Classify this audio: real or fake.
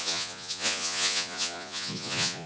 fake